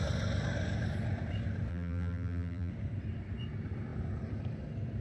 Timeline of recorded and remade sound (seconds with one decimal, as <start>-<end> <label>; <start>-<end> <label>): 0.0-1.7 recorded; 1.7-2.7 remade; 2.7-5.0 recorded

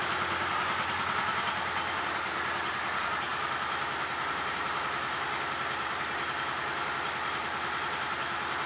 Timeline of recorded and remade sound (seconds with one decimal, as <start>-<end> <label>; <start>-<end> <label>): 0.0-8.7 remade

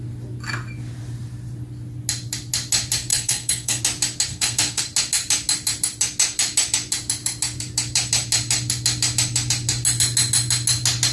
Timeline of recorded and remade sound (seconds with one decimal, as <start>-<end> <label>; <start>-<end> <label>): 0.0-3.1 recorded; 3.1-3.8 remade; 3.8-4.3 recorded; 4.3-4.8 remade; 4.8-11.1 recorded